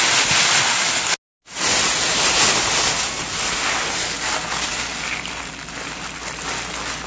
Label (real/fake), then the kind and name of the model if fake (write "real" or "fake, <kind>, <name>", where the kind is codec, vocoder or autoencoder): real